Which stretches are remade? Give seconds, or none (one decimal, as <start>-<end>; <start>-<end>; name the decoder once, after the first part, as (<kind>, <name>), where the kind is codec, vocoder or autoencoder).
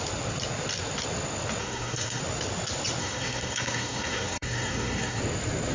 1.6-2.2 (codec, SNAC); 3.0-5.2